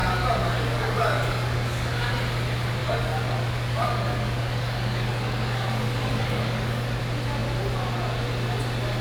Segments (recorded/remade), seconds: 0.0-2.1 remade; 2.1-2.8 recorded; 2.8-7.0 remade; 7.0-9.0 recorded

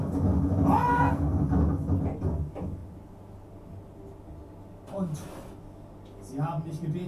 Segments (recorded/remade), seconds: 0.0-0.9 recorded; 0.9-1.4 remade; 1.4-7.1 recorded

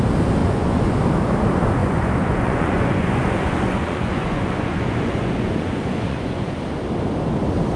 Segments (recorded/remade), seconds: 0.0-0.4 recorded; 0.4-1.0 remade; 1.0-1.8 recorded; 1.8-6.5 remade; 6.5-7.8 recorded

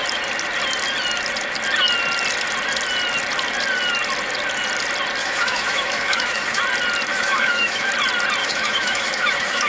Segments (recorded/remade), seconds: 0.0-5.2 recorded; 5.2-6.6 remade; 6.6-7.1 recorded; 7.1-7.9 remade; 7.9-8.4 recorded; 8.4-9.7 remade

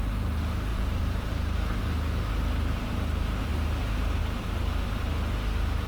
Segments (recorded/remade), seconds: 0.0-0.7 recorded; 0.7-1.3 remade; 1.3-5.9 recorded

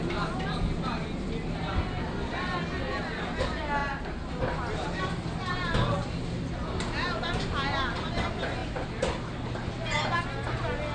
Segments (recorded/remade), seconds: 0.0-10.9 recorded

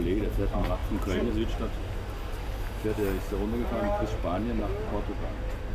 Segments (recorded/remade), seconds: 0.0-5.7 recorded